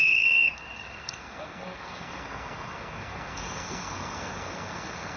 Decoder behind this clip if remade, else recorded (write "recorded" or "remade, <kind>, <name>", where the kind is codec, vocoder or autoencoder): remade, codec, SNAC